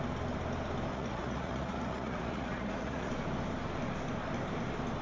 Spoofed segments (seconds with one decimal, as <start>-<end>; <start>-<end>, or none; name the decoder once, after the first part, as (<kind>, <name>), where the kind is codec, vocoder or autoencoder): 0.9-3.1 (vocoder, Vocos)